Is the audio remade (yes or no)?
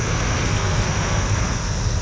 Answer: yes